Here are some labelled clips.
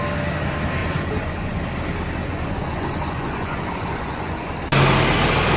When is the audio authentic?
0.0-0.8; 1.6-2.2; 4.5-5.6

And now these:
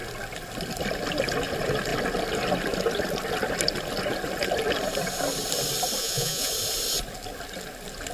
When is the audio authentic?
0.0-6.0; 6.5-8.1

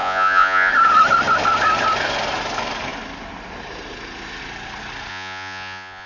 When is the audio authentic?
0.7-5.1

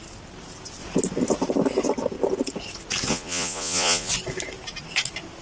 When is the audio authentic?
0.0-3.1; 4.1-5.4

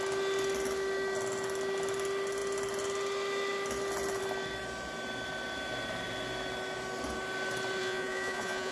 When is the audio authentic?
0.0-7.8

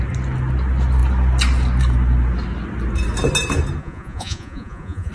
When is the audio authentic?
0.0-3.8